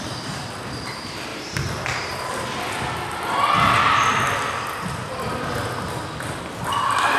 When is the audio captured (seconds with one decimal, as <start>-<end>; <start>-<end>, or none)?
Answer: 0.0-1.3; 2.3-7.2